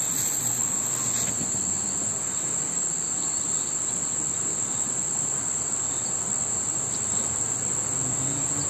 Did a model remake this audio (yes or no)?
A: no